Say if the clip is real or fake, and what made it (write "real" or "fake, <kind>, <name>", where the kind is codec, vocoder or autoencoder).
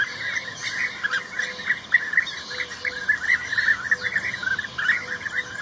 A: real